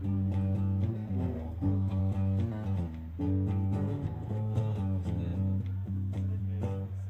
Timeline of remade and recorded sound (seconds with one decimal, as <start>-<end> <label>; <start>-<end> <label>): 0.0-0.9 recorded; 0.9-2.0 remade; 2.0-3.9 recorded; 3.9-4.6 remade; 4.6-7.1 recorded